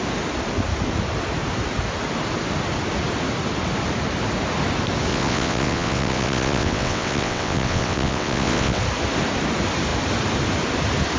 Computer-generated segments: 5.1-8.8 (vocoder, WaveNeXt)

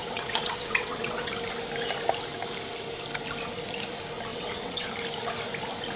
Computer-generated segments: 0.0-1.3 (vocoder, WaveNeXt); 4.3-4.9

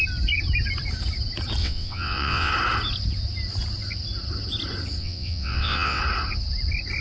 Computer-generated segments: 1.6-2.5 (vocoder, WaveNeXt); 5.0-6.0

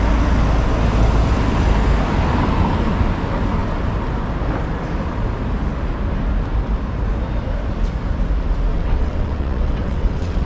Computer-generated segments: 8.7-10.5 (vocoder, WaveNeXt)

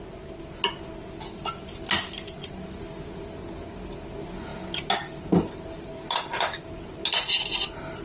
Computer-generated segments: none